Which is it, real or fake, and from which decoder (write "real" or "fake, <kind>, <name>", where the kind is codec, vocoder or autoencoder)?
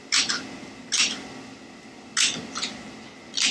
real